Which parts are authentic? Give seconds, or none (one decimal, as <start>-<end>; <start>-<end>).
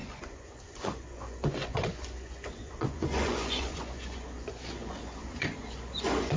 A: none